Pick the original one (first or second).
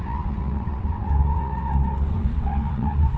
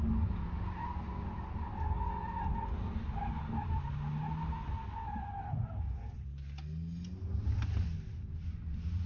second